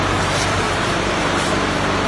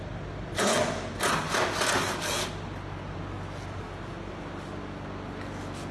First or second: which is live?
second